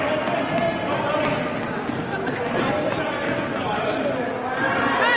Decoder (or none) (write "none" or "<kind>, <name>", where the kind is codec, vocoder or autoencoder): none